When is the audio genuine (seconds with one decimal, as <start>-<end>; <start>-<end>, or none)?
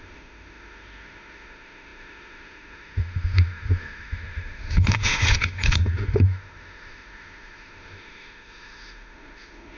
none